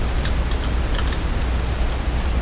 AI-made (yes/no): no